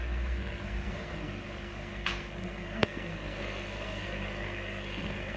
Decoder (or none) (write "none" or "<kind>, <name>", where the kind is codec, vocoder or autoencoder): codec, SNAC